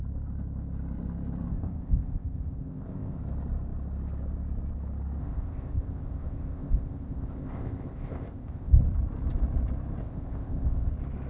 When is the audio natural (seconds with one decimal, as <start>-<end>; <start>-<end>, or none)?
0.0-1.5; 3.2-5.2; 8.8-10.0; 10.9-11.3